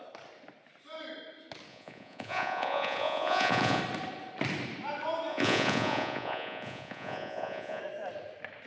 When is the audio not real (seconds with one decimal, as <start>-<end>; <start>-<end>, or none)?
1.7-3.8; 5.3-7.8